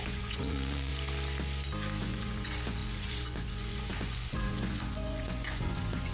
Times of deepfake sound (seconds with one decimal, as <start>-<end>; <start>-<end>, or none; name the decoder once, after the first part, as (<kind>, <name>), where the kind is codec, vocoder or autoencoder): 0.0-0.9 (vocoder, Vocos); 2.0-6.1